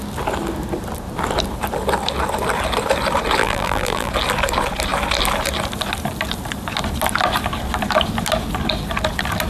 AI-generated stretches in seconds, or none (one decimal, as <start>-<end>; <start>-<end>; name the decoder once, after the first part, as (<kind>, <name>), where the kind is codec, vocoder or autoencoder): 3.4-4.1 (vocoder, BigVGAN v2)

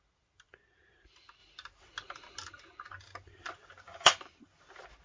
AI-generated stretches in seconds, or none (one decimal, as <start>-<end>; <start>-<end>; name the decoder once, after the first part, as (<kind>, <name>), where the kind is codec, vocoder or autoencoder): 3.9-4.4 (vocoder, BigVGAN v2)

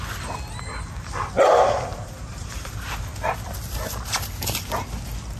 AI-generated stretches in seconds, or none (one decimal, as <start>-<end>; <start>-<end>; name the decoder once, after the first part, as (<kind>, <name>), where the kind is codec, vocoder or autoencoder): 1.9-3.0 (vocoder, BigVGAN v2)

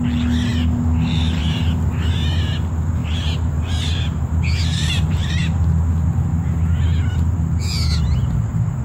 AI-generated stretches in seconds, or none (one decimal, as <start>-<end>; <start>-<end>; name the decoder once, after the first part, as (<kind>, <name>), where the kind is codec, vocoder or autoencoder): 3.0-4.3 (vocoder, BigVGAN v2); 4.7-5.4